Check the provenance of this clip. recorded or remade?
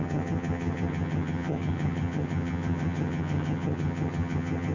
remade